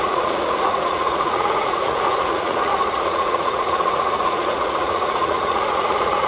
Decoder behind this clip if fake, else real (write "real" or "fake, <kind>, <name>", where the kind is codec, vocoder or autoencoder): fake, vocoder, Vocos